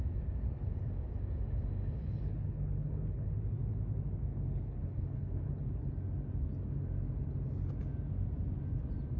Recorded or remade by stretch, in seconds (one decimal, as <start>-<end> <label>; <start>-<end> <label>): 0.0-2.0 recorded; 2.0-3.3 remade; 3.3-4.3 recorded; 4.3-5.6 remade; 5.6-9.2 recorded